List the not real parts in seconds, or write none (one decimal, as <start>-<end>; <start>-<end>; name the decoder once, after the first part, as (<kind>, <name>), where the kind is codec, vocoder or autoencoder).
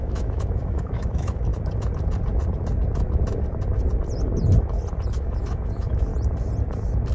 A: 0.0-1.5 (autoencoder, DAC-VAE); 5.1-6.1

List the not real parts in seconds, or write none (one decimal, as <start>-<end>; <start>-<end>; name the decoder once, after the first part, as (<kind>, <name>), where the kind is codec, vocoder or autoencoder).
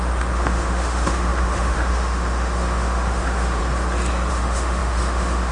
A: 0.0-3.6 (autoencoder, DAC-VAE); 4.3-5.5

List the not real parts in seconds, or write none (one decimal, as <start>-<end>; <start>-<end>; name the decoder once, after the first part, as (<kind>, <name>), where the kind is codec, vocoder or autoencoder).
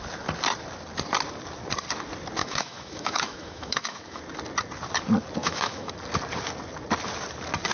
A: 2.4-4.2 (autoencoder, DAC-VAE); 5.4-5.9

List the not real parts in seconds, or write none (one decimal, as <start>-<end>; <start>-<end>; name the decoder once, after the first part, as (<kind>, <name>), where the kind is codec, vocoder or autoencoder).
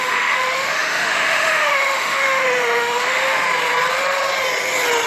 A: 0.0-3.4 (autoencoder, DAC-VAE)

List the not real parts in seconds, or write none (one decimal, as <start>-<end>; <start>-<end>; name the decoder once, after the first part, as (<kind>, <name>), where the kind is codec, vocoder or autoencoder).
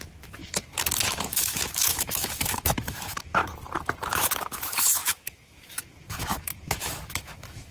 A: 0.0-3.4 (autoencoder, DAC-VAE); 4.0-7.7